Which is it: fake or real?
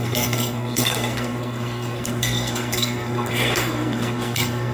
fake